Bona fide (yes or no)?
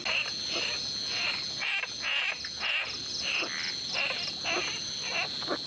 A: yes